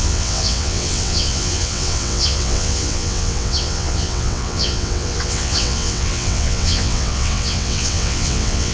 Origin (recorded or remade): remade